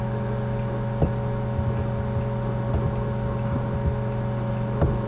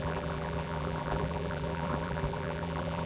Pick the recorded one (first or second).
first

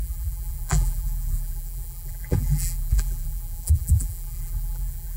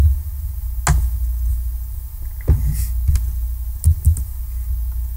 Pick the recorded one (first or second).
second